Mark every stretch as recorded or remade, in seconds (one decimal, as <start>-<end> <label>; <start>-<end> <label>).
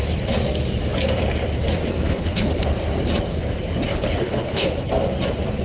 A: 0.0-1.9 recorded; 1.9-2.6 remade; 2.6-3.9 recorded; 3.9-4.9 remade; 4.9-5.6 recorded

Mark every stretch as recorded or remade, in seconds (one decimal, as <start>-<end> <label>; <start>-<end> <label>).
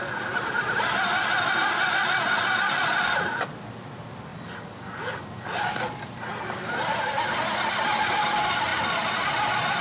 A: 0.0-9.8 recorded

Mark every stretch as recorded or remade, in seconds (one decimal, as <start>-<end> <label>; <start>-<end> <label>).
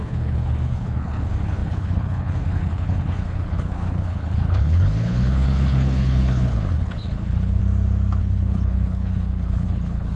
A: 0.0-7.6 remade; 7.6-8.2 recorded; 8.2-10.2 remade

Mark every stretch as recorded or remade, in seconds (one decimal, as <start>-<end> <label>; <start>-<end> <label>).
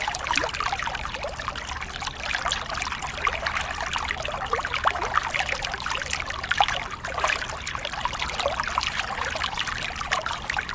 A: 0.0-10.7 recorded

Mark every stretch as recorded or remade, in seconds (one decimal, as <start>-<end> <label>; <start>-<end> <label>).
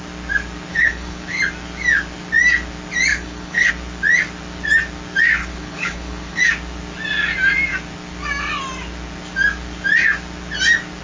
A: 0.0-0.7 recorded; 0.7-1.4 remade; 1.4-3.1 recorded; 3.1-3.7 remade; 3.7-5.4 recorded; 5.4-6.4 remade; 6.4-11.0 recorded